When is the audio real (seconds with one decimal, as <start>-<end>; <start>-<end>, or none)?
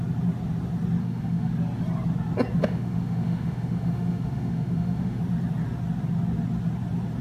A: 0.0-1.0; 1.5-2.6; 5.2-7.2